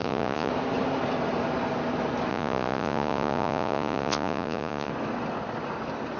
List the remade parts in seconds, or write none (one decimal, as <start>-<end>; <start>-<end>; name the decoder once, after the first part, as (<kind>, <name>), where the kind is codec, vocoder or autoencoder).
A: 0.0-0.5 (vocoder, Vocos); 2.3-4.9